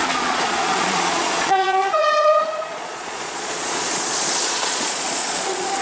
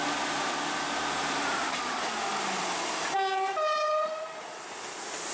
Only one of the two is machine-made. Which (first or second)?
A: first